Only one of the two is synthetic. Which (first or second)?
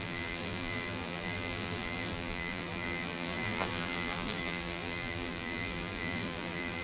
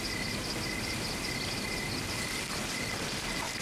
first